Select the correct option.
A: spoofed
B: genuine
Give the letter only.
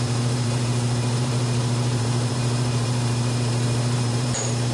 A